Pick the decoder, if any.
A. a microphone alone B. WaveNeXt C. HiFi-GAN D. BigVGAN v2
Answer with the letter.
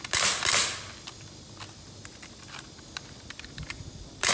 A